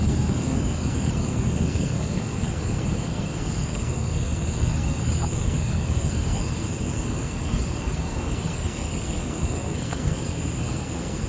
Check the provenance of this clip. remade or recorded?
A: remade